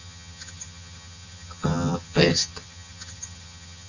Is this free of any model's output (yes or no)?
no